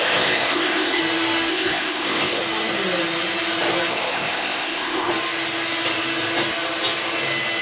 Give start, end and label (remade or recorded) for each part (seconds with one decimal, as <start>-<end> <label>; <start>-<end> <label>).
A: 0.0-1.0 remade; 1.0-1.5 recorded; 1.5-2.4 remade; 2.4-3.9 recorded; 3.9-5.1 remade; 5.1-7.6 recorded